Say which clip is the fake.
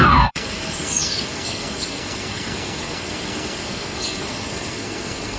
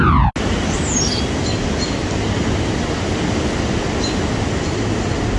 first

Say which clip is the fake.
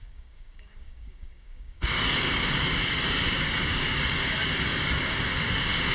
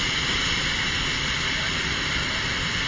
first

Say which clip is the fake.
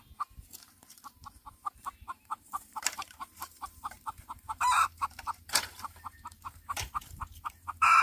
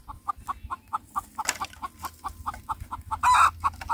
first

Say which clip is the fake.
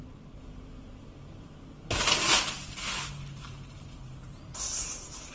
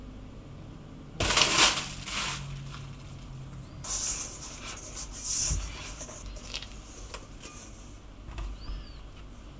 first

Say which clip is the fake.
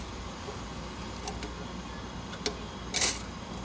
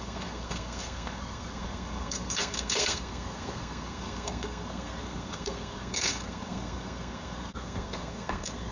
second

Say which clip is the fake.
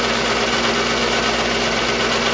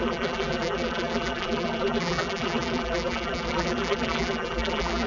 second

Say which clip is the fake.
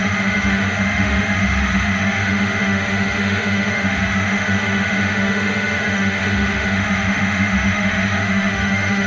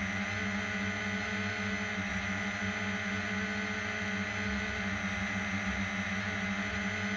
first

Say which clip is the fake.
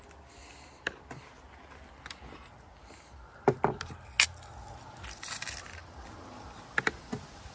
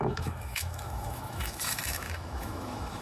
second